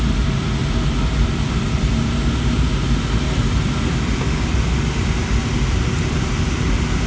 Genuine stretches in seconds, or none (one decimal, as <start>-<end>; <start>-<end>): 0.0-7.1